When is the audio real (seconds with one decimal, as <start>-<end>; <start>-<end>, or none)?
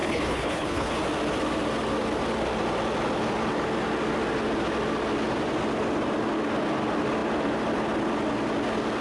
0.9-9.0